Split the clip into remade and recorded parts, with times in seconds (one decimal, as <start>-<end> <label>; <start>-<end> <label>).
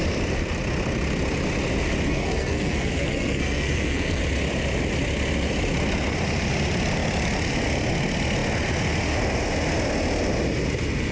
0.0-2.1 recorded; 2.1-4.2 remade; 4.2-11.1 recorded